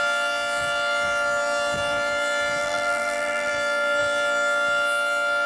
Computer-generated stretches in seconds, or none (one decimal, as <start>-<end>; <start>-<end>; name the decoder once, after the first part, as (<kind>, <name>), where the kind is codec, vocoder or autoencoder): 2.6-3.5 (vocoder, BigVGAN v2)